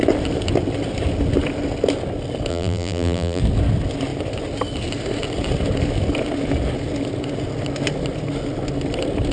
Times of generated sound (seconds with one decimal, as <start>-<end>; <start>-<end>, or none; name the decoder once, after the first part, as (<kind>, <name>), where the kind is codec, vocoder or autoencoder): 2.5-3.4 (vocoder, BigVGAN v2)